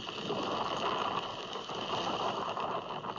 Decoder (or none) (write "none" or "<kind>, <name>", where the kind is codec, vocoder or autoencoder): none